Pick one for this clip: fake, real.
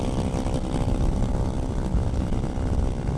real